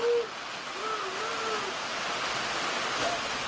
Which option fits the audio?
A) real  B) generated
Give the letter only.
A